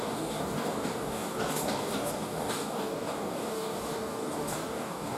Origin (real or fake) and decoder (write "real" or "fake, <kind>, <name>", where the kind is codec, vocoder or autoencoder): fake, codec, DAC